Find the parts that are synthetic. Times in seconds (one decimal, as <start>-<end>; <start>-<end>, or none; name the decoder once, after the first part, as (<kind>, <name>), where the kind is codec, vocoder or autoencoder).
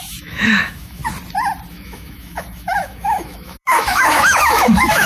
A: 0.0-1.0 (autoencoder, DAC-VAE); 1.7-5.1